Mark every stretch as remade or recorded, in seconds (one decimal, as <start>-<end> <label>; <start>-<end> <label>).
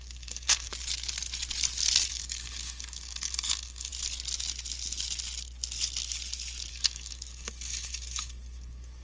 0.0-0.7 remade; 0.7-2.1 recorded; 2.1-3.9 remade; 3.9-6.7 recorded; 6.7-9.0 remade